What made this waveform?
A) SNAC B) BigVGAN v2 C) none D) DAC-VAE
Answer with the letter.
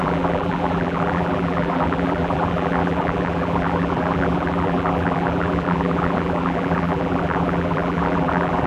B